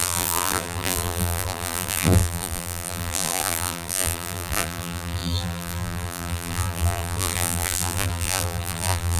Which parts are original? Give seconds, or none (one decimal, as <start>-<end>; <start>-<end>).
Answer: none